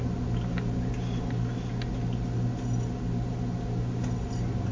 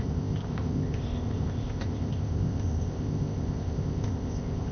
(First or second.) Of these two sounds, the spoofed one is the second